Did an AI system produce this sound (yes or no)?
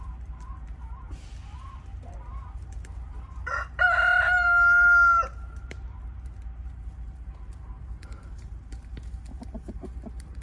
yes